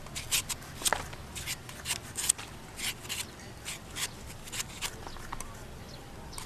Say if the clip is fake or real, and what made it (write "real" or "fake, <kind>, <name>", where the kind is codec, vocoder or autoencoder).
real